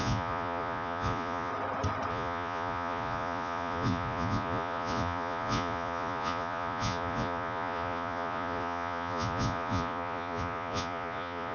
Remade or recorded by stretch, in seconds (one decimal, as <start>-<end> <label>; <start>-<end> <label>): 0.0-1.5 remade; 1.5-2.1 recorded; 2.1-11.5 remade